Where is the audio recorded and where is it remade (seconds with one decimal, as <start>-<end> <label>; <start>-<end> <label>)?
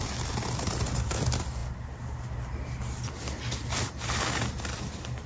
0.0-5.3 recorded